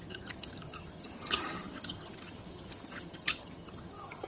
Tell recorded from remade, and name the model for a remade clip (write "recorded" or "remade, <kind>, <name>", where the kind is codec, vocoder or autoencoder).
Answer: remade, vocoder, HiFi-GAN